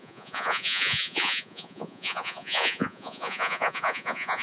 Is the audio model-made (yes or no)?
yes